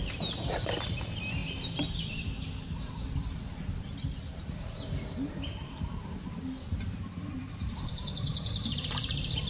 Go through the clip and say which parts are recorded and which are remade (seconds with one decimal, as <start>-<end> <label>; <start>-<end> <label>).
0.0-1.4 remade; 1.4-4.5 recorded; 4.5-5.9 remade; 5.9-7.3 recorded; 7.3-8.3 remade; 8.3-8.8 recorded; 8.8-9.5 remade